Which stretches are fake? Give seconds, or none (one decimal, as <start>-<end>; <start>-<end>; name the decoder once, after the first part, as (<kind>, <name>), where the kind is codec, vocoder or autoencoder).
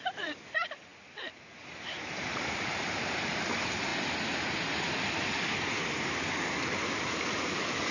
0.0-3.9 (vocoder, BigVGAN v2); 4.8-7.9